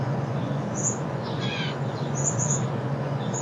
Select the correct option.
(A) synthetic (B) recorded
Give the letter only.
A